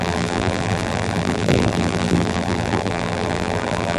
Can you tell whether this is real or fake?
fake